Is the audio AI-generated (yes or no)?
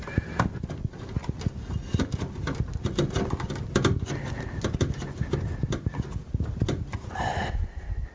no